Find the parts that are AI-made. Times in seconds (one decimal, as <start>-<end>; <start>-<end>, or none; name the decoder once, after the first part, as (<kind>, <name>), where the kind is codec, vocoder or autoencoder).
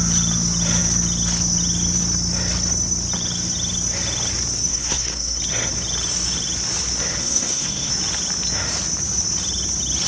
4.7-5.4 (codec, SNAC); 7.2-7.9